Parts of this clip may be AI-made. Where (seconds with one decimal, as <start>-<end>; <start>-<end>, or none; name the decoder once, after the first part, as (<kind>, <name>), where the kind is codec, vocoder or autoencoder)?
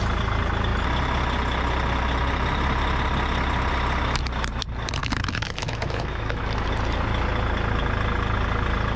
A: 5.0-6.4 (autoencoder, DAC-VAE)